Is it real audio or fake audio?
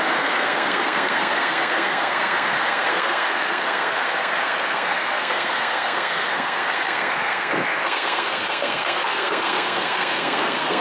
fake